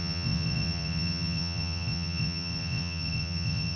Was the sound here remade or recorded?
remade